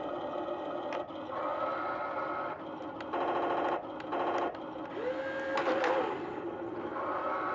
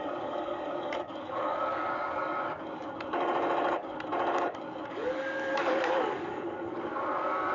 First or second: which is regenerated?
second